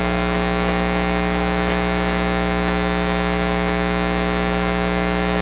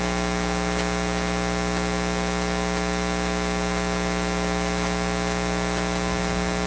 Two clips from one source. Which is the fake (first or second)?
first